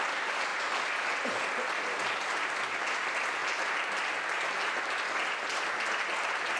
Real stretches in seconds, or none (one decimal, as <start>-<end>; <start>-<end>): 0.0-6.6